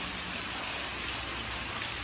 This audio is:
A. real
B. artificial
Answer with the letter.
A